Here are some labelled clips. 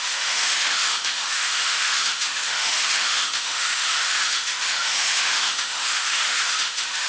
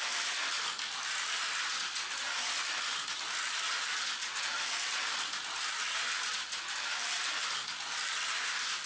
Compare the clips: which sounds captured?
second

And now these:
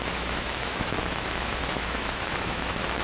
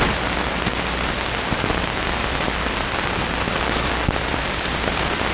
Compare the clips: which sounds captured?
second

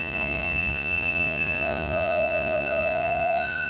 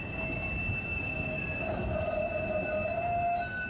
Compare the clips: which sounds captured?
second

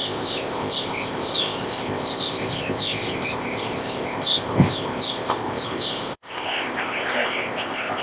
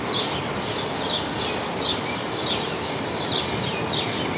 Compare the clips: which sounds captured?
second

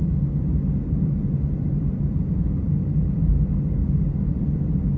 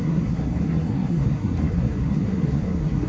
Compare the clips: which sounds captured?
first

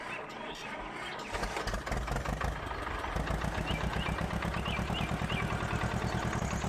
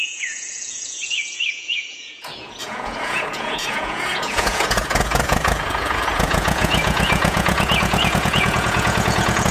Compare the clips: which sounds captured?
first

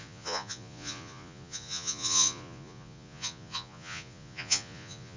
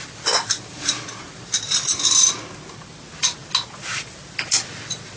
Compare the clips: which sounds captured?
second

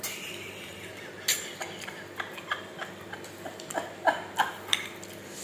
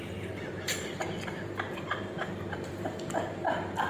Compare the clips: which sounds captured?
first